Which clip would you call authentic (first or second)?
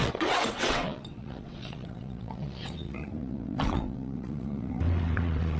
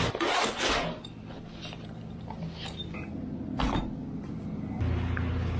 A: second